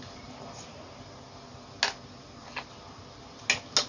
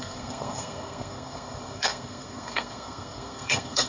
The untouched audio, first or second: first